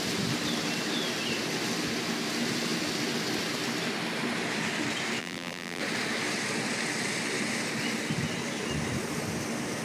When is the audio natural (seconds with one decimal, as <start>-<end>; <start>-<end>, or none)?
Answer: 0.0-5.2; 5.8-9.8